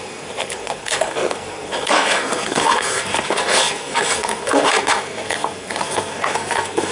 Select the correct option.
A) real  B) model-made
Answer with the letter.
B